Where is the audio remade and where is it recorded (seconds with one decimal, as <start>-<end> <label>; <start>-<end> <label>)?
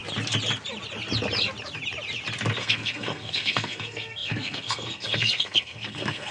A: 0.0-2.6 recorded; 2.6-6.3 remade